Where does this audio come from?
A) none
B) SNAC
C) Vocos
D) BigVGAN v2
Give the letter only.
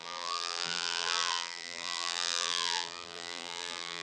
D